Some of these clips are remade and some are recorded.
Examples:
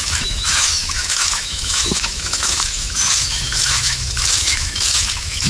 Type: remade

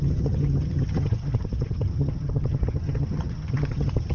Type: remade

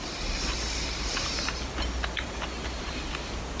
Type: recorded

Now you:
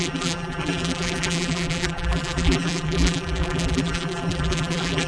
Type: remade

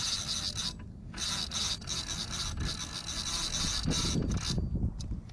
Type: recorded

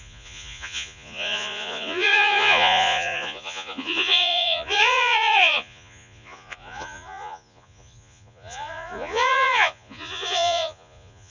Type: remade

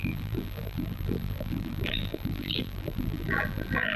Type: remade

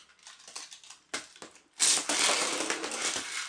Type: recorded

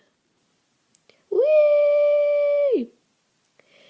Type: recorded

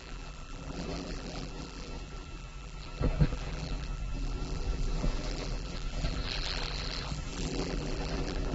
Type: remade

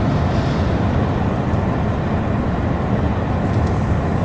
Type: recorded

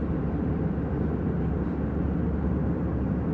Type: remade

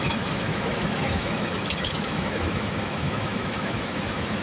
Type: remade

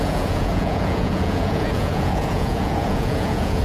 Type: remade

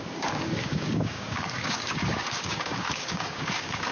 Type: remade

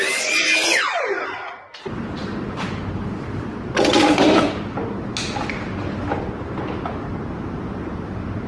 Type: recorded